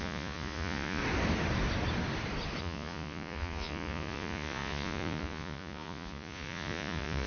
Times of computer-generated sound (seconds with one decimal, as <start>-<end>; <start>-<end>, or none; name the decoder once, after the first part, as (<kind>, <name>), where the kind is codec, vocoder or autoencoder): 0.0-1.0 (vocoder, Vocos); 2.6-7.3